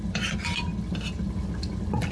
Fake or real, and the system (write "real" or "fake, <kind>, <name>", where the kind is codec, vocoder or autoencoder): real